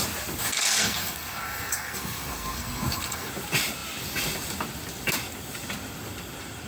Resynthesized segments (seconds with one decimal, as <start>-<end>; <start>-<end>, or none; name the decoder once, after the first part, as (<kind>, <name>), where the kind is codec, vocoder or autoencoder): 0.4-3.3 (codec, SNAC)

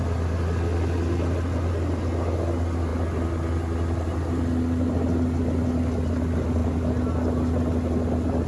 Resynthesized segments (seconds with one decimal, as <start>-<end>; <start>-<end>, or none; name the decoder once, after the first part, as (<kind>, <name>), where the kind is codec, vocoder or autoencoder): none

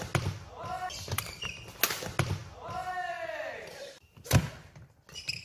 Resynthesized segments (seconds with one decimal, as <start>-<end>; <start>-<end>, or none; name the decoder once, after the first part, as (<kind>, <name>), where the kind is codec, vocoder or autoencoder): none

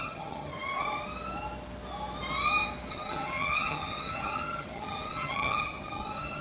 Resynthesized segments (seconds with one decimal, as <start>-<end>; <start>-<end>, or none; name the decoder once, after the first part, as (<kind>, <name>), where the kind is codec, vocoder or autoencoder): 0.0-0.5 (vocoder, HiFi-GAN); 2.9-6.4

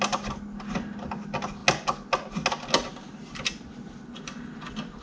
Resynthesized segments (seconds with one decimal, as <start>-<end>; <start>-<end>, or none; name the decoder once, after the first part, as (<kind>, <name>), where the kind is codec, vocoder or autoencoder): none